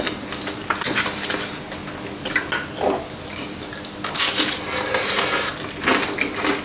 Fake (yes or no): no